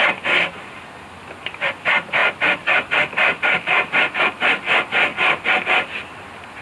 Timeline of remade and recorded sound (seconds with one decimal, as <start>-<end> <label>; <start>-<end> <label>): 0.0-2.2 recorded; 2.2-4.2 remade; 4.2-6.6 recorded